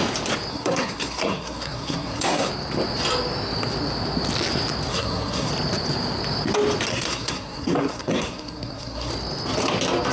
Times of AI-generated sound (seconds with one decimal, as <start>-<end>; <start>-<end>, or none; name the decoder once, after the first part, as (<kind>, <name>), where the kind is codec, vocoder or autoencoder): 0.5-2.5 (codec, SNAC); 4.9-5.5; 6.9-9.1